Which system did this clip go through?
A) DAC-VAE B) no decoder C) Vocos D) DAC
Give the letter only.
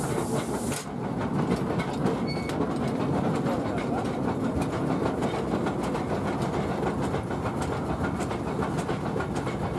B